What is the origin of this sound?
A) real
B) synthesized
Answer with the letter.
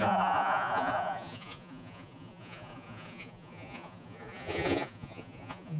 B